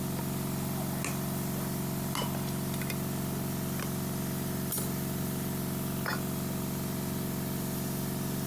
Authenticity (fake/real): real